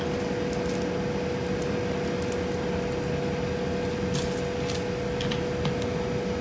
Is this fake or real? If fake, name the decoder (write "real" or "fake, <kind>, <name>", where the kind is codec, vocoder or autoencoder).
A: real